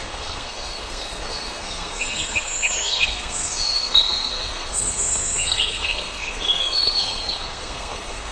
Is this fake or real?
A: fake